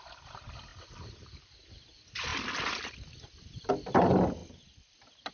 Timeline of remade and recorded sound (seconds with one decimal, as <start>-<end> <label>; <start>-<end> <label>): 0.0-5.3 recorded